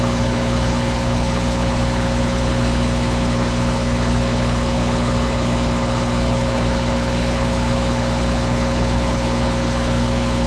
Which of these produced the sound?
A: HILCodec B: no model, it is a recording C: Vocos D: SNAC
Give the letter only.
A